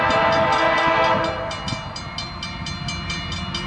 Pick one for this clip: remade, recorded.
recorded